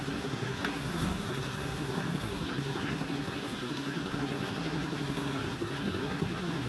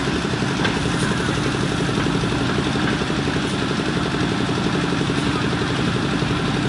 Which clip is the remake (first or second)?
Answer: first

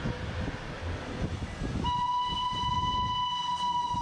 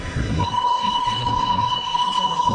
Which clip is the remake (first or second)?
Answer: second